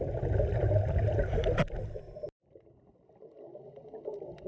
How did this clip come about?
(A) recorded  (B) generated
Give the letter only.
A